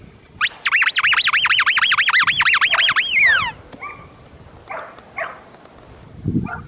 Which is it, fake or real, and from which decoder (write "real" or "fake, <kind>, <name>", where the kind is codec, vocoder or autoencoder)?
real